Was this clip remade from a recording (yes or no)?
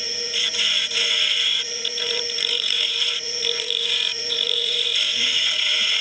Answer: yes